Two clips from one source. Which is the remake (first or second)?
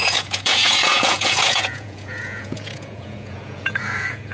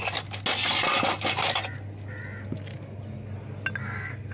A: first